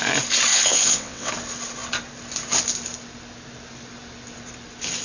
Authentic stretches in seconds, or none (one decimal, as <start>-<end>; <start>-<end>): 0.0-0.5; 1.3-5.0